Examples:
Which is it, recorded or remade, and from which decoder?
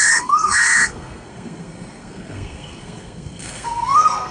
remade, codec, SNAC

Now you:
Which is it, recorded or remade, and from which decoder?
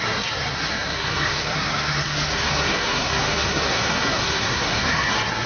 remade, codec, SNAC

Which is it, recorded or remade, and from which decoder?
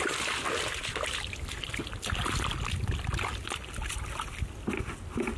recorded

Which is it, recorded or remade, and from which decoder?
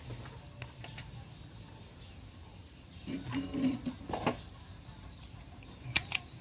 recorded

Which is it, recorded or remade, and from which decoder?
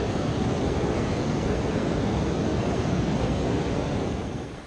remade, codec, SNAC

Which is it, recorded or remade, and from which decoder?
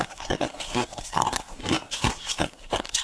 remade, codec, SNAC